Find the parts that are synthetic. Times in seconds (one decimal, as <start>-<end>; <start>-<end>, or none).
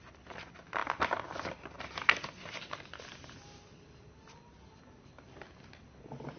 none